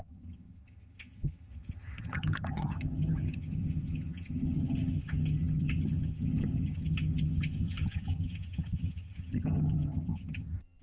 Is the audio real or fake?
fake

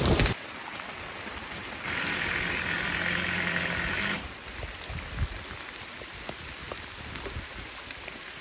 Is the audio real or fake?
real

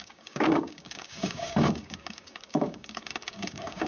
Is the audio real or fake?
fake